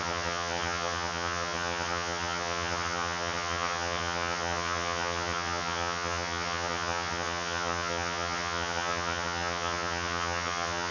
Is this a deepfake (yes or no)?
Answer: yes